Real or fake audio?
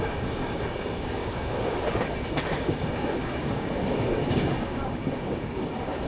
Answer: fake